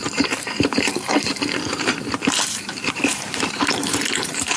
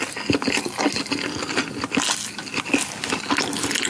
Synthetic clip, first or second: first